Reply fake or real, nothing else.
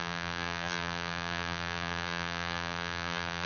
fake